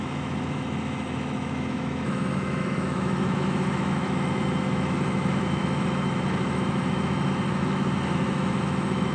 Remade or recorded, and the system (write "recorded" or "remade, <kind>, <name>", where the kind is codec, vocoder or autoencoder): remade, autoencoder, DAC-VAE